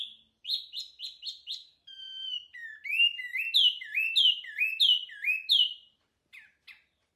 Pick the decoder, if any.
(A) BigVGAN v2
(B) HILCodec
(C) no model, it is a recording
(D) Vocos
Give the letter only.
C